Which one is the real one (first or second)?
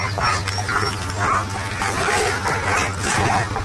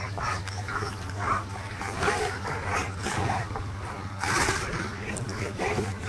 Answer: first